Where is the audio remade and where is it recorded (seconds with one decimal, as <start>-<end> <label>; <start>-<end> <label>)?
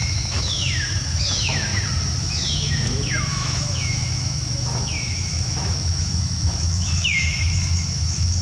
0.0-1.7 remade; 1.7-2.2 recorded; 2.2-8.4 remade